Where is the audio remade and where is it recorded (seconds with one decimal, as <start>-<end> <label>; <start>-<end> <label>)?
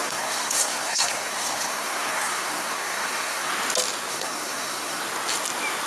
0.0-3.5 remade; 3.5-4.1 recorded; 4.1-5.0 remade; 5.0-5.9 recorded